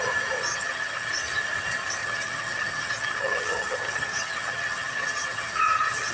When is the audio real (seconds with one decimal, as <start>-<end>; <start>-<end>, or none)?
0.0-0.5; 1.1-2.0